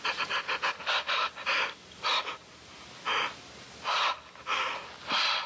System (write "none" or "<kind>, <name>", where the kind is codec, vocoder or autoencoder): none